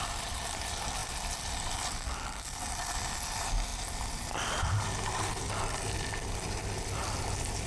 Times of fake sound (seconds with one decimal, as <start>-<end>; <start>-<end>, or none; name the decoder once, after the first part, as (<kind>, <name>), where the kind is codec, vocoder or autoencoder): none